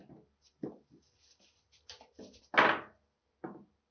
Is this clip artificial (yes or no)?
no